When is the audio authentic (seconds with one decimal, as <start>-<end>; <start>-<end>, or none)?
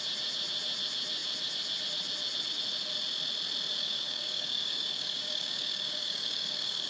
0.0-3.8